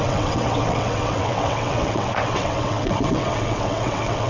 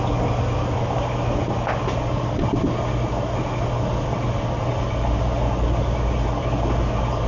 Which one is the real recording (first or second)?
second